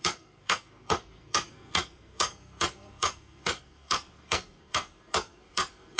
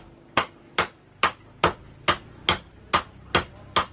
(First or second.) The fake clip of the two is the first